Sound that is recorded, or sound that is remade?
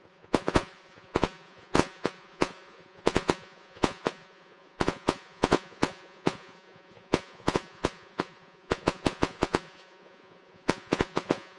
remade